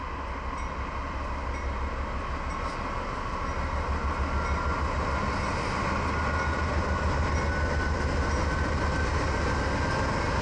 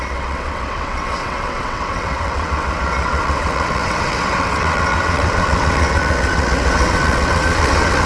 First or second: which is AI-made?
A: second